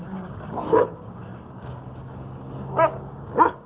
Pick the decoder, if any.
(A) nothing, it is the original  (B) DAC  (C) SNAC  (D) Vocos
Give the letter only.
B